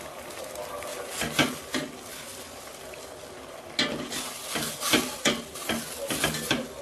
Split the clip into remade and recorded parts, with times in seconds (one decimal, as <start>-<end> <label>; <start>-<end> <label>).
0.0-6.8 recorded